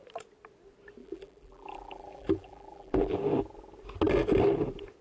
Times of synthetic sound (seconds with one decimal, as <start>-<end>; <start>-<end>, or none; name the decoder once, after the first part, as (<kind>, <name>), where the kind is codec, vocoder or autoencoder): 1.0-3.2 (vocoder, BigVGAN v2)